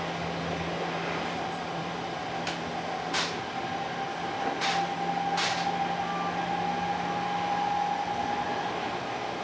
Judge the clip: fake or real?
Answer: real